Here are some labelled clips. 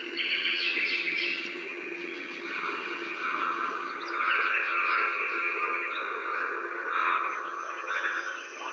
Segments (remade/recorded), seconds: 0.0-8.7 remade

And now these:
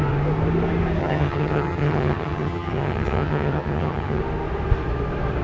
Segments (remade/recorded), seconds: 0.0-1.0 recorded; 1.0-4.2 remade; 4.2-5.4 recorded

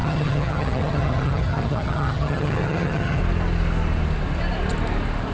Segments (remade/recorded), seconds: 0.0-3.2 remade; 3.2-5.3 recorded

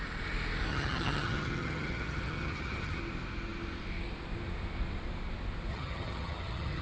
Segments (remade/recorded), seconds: 0.0-0.7 recorded; 0.7-3.0 remade; 3.0-5.7 recorded; 5.7-6.8 remade

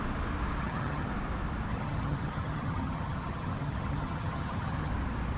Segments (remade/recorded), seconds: 0.0-0.6 recorded; 0.6-1.1 remade; 1.1-1.7 recorded; 1.7-4.9 remade; 4.9-5.4 recorded

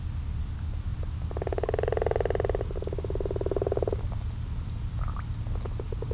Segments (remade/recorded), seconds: 0.0-6.1 recorded